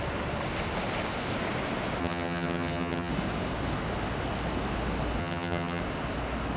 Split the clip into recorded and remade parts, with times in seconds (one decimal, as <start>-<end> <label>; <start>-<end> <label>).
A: 0.0-2.0 recorded; 2.0-3.1 remade; 3.1-5.2 recorded; 5.2-5.8 remade; 5.8-6.6 recorded